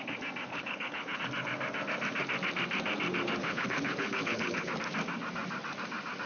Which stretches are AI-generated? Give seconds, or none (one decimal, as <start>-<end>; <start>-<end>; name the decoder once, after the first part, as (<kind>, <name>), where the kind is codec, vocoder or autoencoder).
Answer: 0.5-1.2 (codec, HILCodec); 3.4-4.7